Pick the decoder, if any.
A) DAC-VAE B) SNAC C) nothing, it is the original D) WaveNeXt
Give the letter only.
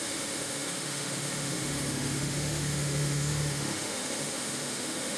A